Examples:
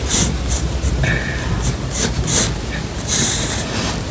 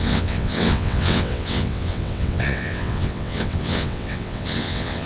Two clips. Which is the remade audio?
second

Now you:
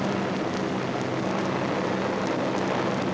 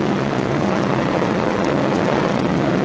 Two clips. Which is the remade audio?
second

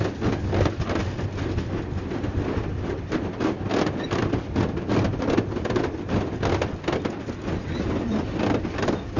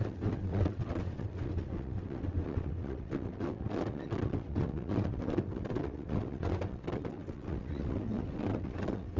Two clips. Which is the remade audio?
second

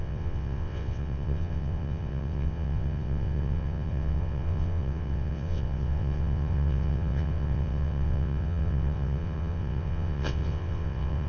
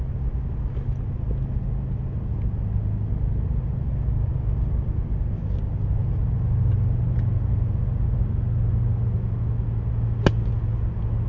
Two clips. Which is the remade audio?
first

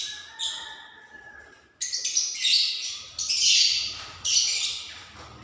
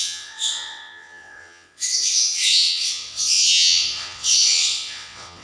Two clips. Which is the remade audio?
second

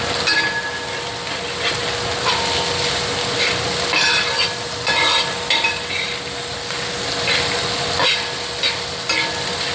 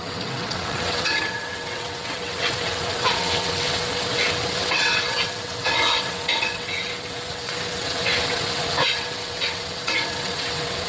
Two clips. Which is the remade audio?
second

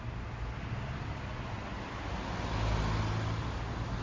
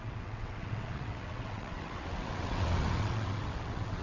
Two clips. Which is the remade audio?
second